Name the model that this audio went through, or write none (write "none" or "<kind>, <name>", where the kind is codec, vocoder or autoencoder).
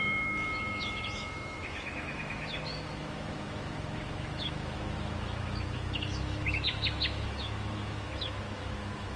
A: autoencoder, DAC-VAE